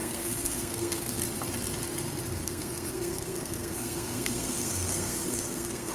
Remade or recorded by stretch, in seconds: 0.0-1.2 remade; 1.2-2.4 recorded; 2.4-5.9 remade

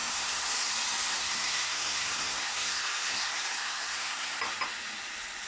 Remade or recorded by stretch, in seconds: 0.0-0.7 remade; 0.7-1.1 recorded; 1.1-4.4 remade; 4.4-5.5 recorded

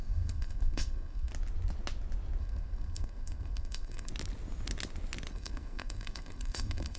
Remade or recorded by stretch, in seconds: 0.0-1.3 remade; 1.3-2.4 recorded; 2.4-4.1 remade; 4.1-5.3 recorded; 5.3-7.0 remade

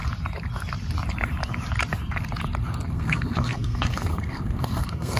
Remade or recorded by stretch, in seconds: 0.0-2.9 recorded; 2.9-5.2 remade

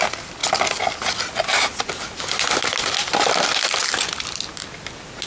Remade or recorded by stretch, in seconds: 0.0-5.3 recorded

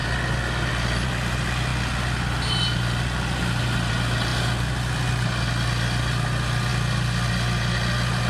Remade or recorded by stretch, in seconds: 0.0-8.3 recorded

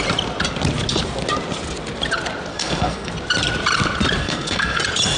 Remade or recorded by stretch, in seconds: 0.0-2.5 recorded; 2.5-3.1 remade; 3.1-4.2 recorded; 4.2-4.8 remade; 4.8-5.2 recorded